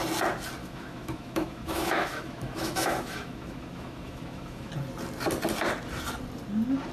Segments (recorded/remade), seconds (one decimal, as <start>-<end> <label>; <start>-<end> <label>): 0.0-0.6 recorded; 0.6-4.7 remade; 4.7-6.9 recorded